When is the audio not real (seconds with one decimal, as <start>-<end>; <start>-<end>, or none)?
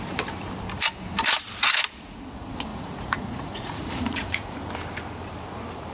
2.7-4.5